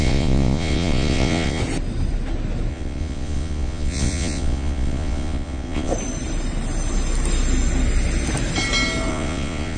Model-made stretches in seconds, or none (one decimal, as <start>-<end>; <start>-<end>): 0.0-1.6; 2.7-5.9; 9.1-9.8